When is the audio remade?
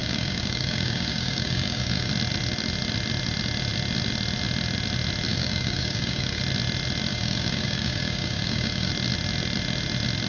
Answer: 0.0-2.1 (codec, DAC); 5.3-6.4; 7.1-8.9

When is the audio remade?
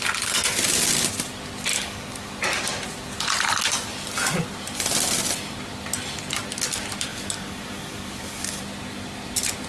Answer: 1.7-2.3 (codec, DAC); 7.1-8.6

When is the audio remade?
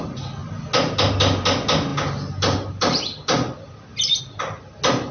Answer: none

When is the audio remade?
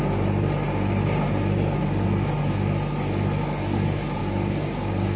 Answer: 4.2-5.2 (codec, DAC)